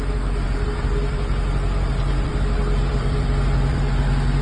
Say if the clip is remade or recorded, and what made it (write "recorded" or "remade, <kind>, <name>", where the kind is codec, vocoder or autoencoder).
remade, vocoder, BigVGAN v2